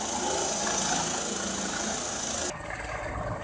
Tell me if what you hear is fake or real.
real